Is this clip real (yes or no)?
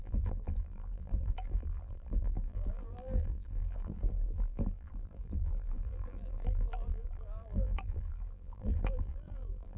no